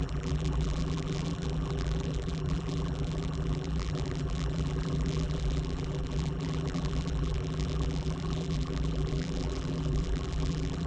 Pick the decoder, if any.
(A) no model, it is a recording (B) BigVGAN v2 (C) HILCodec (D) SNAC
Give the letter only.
B